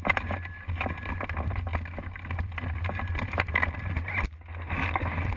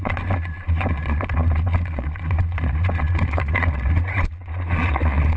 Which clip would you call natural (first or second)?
first